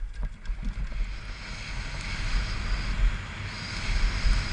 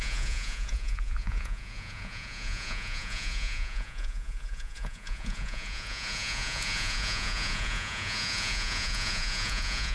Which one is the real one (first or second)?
first